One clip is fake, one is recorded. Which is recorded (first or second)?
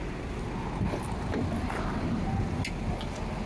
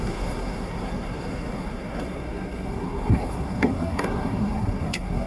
first